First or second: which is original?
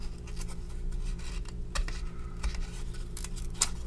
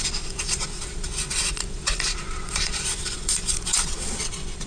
first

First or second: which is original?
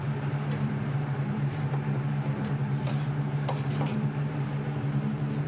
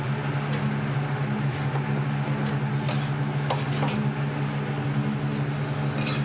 second